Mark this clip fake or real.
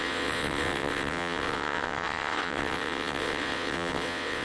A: fake